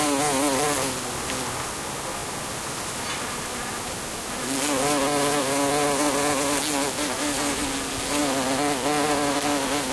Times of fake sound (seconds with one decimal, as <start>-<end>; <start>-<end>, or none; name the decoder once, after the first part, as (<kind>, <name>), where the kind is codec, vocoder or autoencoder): none